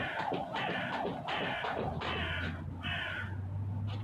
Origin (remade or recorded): recorded